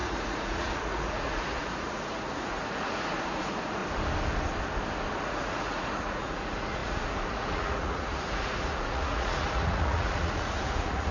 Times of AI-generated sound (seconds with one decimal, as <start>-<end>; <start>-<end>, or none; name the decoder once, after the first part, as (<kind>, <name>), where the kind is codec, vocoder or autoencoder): 0.0-3.8 (vocoder, Vocos); 5.2-11.1